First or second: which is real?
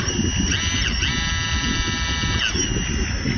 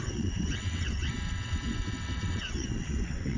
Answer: first